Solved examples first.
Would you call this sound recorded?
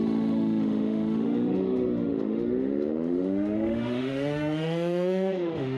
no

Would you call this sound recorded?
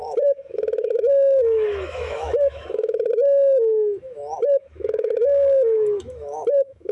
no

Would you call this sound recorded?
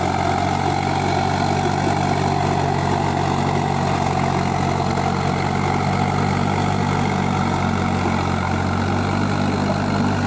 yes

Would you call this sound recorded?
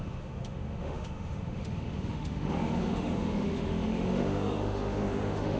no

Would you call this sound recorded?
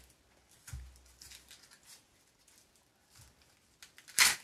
yes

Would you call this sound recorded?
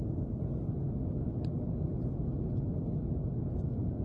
yes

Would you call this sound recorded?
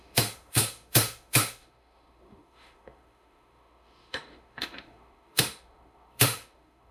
no